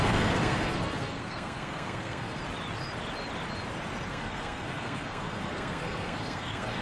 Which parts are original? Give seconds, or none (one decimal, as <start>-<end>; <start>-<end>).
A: 2.4-4.1